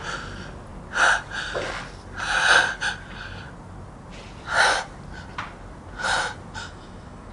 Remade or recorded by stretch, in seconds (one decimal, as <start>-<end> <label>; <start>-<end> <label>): 0.0-6.6 recorded; 6.6-7.3 remade